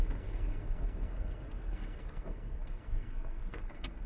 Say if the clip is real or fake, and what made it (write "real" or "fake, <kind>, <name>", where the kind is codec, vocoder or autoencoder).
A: fake, codec, SNAC